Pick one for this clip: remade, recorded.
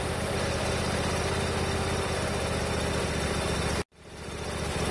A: recorded